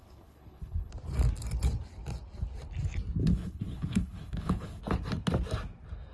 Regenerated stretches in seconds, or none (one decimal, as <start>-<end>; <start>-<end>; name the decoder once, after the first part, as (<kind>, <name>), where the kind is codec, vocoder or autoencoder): 0.0-0.9 (codec, HILCodec); 3.2-4.8